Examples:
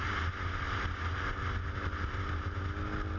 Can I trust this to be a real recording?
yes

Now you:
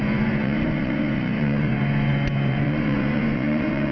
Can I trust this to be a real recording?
no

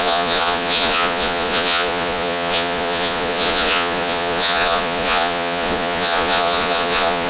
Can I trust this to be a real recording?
no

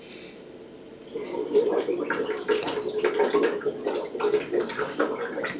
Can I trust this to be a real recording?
yes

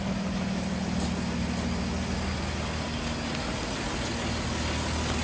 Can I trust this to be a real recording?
yes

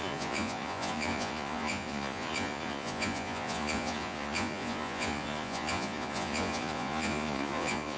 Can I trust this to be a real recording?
no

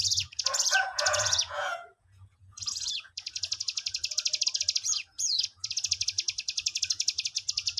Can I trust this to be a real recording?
no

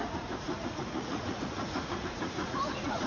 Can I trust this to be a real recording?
no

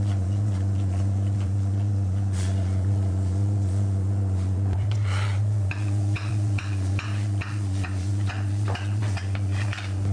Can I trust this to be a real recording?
no